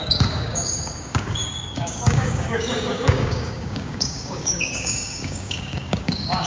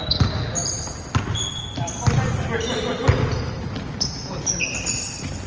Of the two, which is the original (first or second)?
second